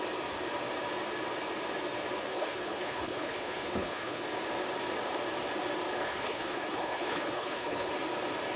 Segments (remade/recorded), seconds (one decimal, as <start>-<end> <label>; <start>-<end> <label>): 0.0-2.3 recorded; 2.3-4.2 remade; 4.2-6.0 recorded; 6.0-7.9 remade; 7.9-8.6 recorded